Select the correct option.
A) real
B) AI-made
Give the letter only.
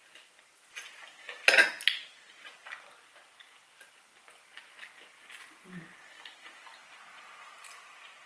A